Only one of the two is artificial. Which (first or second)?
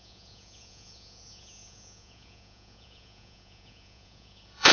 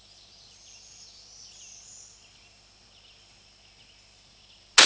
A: first